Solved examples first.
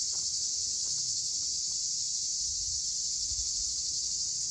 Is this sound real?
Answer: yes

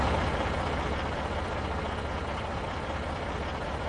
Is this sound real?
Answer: no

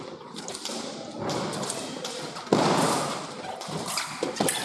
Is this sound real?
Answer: yes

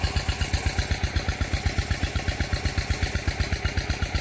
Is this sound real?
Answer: yes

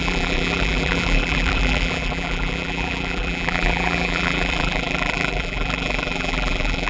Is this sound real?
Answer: no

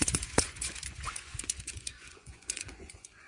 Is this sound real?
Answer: no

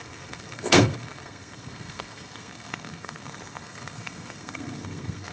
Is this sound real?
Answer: no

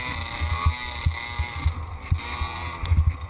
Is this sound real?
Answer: yes